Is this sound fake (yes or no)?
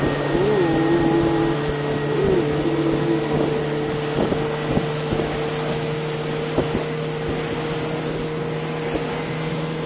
no